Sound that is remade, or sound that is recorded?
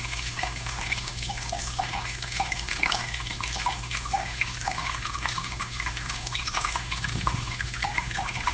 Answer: remade